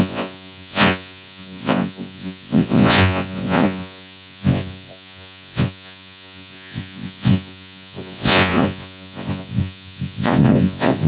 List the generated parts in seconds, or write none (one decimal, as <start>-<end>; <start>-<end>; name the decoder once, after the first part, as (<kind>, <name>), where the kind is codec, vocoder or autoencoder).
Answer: 0.0-11.1 (vocoder, Vocos)